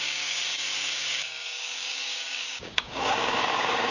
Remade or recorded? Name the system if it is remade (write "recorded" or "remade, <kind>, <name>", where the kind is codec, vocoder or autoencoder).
remade, codec, DAC